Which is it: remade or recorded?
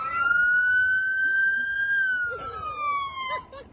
recorded